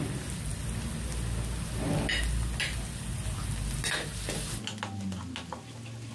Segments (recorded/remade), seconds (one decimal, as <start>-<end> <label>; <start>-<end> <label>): 0.0-6.1 recorded